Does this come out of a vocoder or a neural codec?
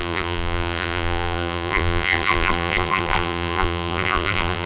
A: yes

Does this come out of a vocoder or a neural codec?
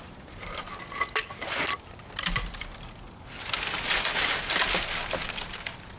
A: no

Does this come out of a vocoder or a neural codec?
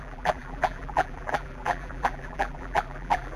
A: yes